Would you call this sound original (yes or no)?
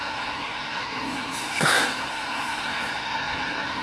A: no